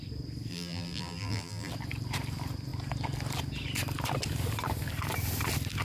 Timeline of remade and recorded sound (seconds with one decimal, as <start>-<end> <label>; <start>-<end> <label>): 0.0-0.5 recorded; 0.5-1.7 remade; 1.7-5.8 recorded